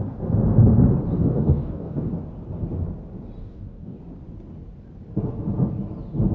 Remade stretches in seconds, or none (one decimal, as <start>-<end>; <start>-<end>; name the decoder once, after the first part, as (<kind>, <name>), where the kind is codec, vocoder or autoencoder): 1.2-2.1 (codec, DAC); 3.4-4.0